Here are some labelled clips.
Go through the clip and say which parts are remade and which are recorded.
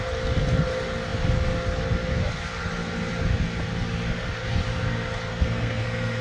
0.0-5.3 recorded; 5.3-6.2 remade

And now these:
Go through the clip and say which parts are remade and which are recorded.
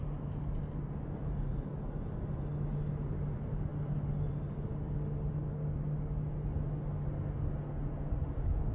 0.0-8.7 recorded